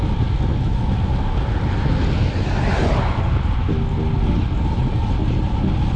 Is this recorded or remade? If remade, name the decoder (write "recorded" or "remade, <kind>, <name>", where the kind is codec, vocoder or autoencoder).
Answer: recorded